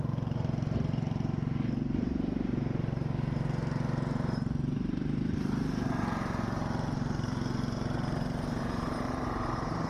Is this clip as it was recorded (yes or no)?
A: no